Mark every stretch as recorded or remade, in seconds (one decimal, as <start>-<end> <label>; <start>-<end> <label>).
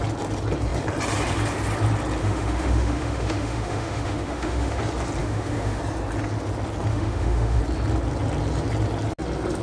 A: 0.0-2.2 recorded; 2.2-4.8 remade; 4.8-5.2 recorded; 5.2-5.8 remade; 5.8-6.9 recorded; 6.9-7.6 remade; 7.6-9.6 recorded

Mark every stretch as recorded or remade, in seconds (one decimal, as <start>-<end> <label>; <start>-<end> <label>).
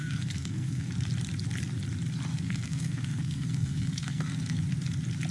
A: 0.0-0.9 remade; 0.9-2.3 recorded; 2.3-4.6 remade; 4.6-5.3 recorded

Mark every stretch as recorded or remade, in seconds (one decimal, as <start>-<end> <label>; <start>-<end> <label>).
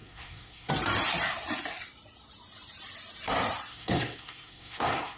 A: 0.0-0.7 remade; 0.7-3.7 recorded; 3.7-5.2 remade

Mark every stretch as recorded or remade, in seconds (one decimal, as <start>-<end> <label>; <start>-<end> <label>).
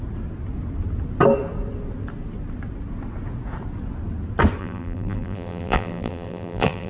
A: 0.0-4.6 recorded; 4.6-6.9 remade